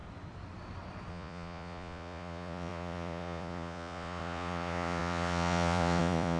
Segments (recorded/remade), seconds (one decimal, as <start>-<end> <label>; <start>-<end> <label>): 0.0-1.1 recorded; 1.1-6.4 remade